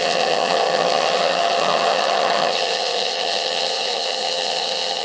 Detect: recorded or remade remade